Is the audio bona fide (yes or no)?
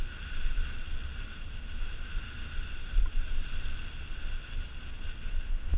yes